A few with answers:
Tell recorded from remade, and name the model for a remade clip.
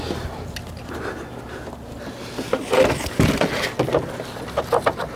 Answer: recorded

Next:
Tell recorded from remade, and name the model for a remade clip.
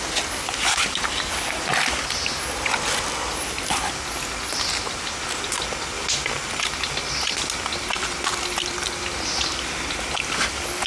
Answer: recorded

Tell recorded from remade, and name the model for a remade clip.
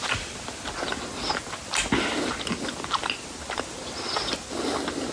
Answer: recorded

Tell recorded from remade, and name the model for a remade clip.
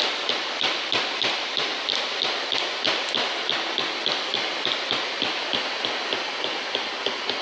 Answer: recorded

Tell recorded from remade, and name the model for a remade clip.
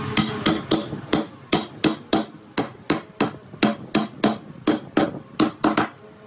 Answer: recorded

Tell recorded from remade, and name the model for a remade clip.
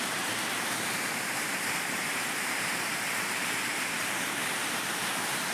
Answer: remade, vocoder, BigVGAN v2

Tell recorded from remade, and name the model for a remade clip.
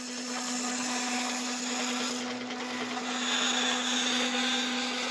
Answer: recorded